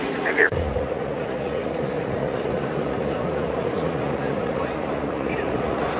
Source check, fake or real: fake